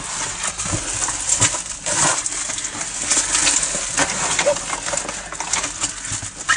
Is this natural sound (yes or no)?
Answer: yes